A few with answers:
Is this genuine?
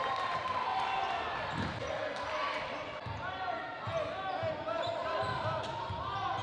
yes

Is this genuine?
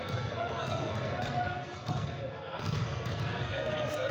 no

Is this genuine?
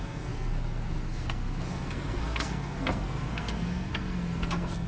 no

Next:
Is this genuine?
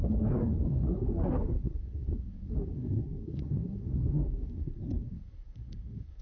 no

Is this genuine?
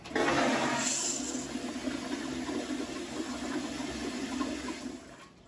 yes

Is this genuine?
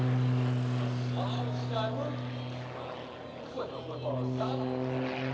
yes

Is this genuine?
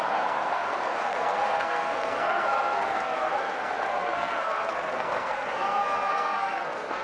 no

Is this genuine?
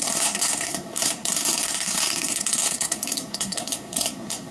no